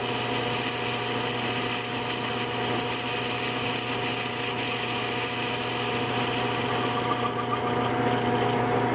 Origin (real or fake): real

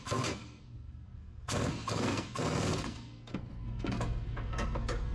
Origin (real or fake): fake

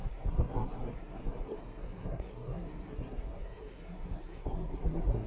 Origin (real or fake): fake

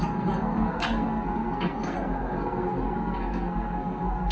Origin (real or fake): fake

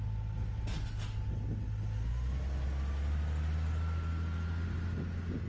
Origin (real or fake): real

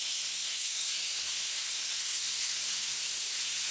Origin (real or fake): fake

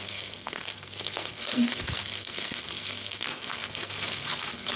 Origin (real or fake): fake